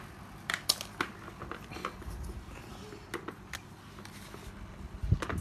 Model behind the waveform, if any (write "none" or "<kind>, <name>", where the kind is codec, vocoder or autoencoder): none